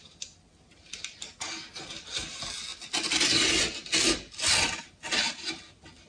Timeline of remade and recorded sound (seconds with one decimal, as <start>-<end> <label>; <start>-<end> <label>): 0.0-6.1 recorded